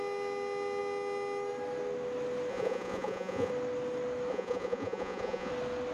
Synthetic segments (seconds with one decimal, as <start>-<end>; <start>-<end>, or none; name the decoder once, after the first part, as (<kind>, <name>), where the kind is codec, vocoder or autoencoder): 2.5-3.5 (vocoder, Vocos); 4.3-5.5